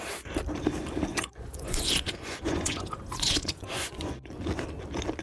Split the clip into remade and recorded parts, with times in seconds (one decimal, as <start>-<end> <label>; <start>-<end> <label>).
0.0-1.1 recorded; 1.1-4.1 remade; 4.1-5.2 recorded